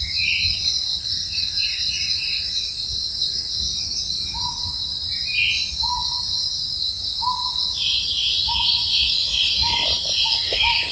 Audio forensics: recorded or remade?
recorded